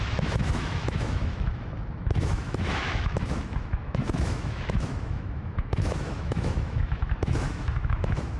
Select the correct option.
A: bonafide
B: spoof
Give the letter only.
B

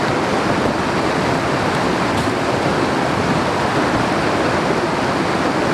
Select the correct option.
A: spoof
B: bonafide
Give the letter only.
B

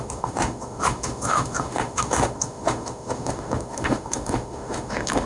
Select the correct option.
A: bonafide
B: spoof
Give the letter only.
B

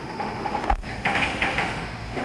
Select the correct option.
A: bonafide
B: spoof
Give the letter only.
B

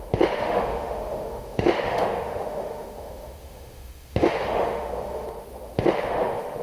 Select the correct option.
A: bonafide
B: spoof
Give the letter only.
B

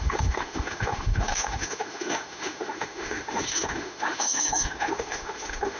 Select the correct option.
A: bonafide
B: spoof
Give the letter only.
B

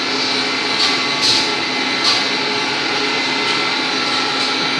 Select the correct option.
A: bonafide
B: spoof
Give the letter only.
A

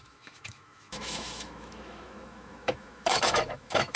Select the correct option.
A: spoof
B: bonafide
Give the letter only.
A